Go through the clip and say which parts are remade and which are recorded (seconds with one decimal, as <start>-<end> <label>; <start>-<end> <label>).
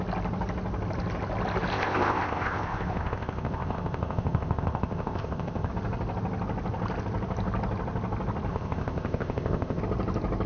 0.0-1.7 recorded; 1.7-5.7 remade; 5.7-8.5 recorded; 8.5-9.8 remade; 9.8-10.5 recorded